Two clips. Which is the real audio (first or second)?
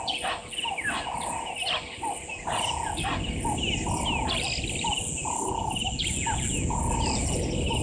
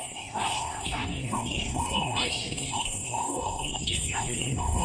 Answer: first